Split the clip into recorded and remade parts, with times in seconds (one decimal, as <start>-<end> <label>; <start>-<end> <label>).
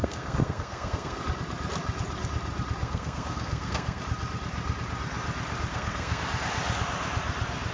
0.0-1.2 remade; 1.2-2.8 recorded; 2.8-4.0 remade; 4.0-5.7 recorded; 5.7-6.2 remade; 6.2-7.7 recorded